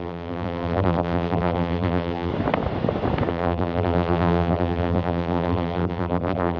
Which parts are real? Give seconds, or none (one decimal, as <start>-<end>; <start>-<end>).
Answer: 2.3-3.3